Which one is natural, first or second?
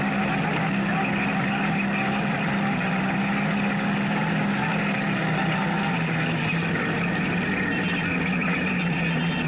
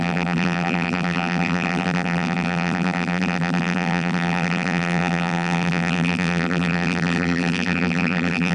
first